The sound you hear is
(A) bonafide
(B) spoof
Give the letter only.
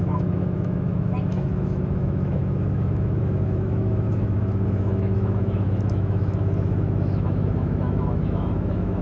B